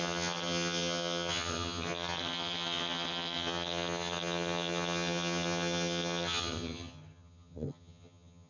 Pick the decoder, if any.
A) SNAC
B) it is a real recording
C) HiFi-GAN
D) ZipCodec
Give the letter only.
C